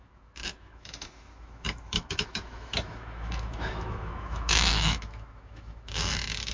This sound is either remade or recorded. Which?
remade